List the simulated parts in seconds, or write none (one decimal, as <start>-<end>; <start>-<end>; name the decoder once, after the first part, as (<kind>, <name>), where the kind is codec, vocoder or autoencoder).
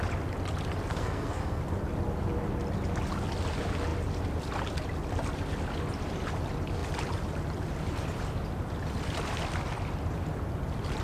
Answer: 0.9-1.6 (codec, SNAC)